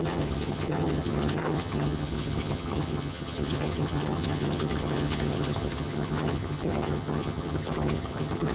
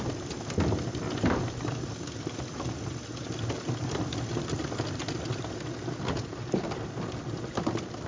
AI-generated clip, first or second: first